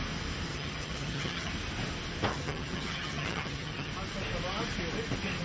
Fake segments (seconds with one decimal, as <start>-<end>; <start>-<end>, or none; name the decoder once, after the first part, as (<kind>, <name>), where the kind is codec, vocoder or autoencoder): 0.5-1.5 (vocoder, HiFi-GAN); 2.3-3.9